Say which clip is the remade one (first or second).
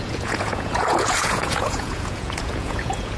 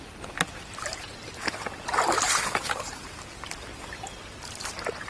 first